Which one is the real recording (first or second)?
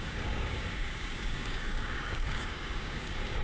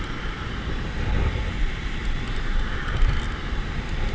second